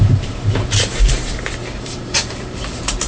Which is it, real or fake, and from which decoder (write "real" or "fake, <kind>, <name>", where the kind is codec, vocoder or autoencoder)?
fake, vocoder, BigVGAN v2